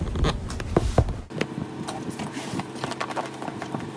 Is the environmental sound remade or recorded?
remade